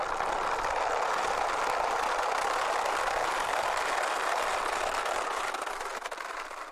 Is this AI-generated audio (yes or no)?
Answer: no